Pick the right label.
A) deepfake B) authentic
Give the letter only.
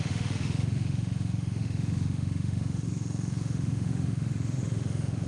A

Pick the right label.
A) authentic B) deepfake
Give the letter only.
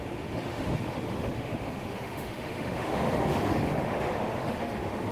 B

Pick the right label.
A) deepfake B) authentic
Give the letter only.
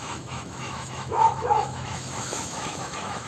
A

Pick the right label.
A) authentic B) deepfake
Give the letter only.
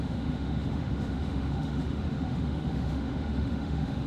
B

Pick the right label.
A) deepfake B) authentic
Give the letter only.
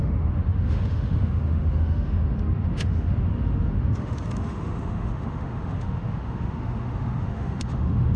A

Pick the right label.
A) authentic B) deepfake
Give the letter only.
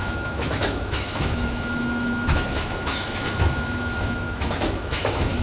B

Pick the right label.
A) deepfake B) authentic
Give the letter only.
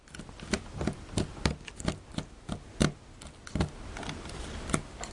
B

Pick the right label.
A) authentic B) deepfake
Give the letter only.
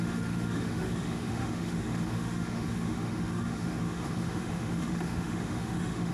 B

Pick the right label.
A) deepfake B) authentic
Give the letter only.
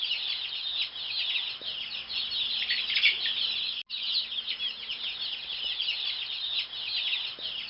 B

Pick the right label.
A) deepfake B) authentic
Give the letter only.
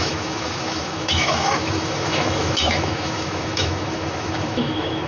A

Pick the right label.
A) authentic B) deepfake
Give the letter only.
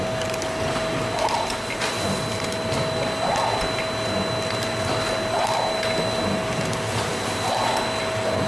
A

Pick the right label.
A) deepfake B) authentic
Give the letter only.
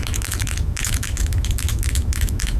A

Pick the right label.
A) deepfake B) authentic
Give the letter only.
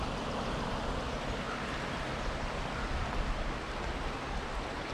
B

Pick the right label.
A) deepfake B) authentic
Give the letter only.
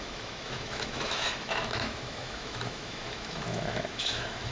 A